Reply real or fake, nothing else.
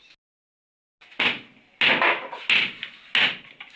real